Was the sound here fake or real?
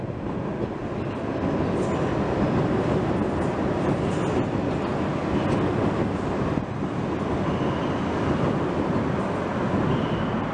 real